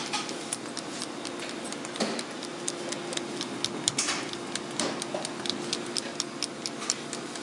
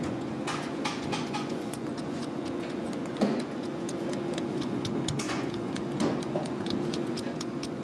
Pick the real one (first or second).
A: first